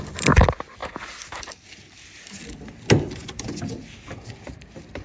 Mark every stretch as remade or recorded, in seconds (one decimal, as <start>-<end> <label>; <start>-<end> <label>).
0.0-5.0 recorded